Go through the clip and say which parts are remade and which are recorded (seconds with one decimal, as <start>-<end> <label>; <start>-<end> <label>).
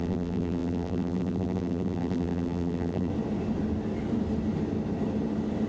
0.0-3.1 remade; 3.1-5.7 recorded